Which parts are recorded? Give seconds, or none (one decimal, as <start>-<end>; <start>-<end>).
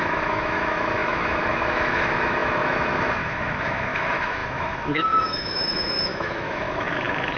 none